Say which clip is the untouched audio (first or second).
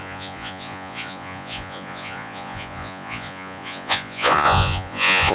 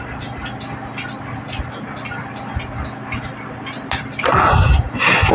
second